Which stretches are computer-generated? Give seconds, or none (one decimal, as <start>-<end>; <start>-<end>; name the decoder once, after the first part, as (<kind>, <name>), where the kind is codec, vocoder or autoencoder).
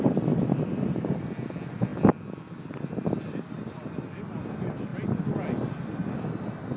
none